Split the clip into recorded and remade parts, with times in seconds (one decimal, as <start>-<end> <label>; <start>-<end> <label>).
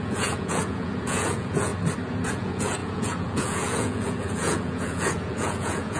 0.0-1.7 remade; 1.7-2.3 recorded; 2.3-6.0 remade